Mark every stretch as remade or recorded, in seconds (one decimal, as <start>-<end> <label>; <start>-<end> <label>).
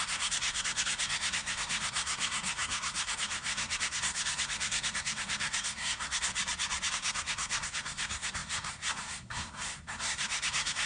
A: 0.0-6.3 remade; 6.3-6.9 recorded; 6.9-10.9 remade